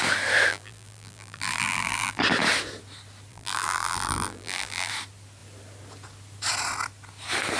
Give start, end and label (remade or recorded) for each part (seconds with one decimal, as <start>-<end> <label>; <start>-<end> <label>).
0.0-0.5 recorded; 0.5-2.2 remade; 2.2-3.3 recorded; 3.3-4.9 remade; 4.9-7.6 recorded